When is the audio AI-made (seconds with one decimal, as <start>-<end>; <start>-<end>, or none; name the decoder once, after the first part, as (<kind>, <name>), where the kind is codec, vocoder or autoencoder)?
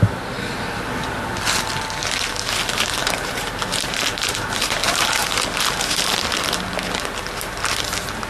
3.0-5.4 (vocoder, BigVGAN v2)